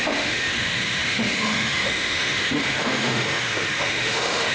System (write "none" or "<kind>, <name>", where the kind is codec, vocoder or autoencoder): autoencoder, DAC-VAE